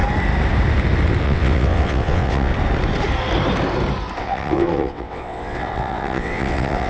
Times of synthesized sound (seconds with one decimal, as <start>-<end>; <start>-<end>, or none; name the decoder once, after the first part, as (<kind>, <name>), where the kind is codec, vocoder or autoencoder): 1.2-2.5 (vocoder, WaveNeXt); 4.2-6.9